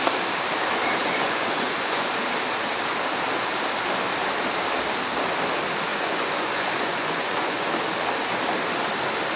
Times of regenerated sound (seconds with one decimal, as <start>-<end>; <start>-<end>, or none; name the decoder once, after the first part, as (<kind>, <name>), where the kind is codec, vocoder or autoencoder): 1.0-2.1 (vocoder, Vocos); 5.9-7.7